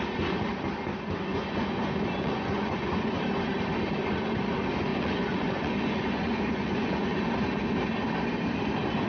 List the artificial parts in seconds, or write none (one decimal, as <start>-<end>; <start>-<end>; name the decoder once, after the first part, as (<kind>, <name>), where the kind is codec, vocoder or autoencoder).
1.3-3.2 (vocoder, Vocos); 4.9-7.2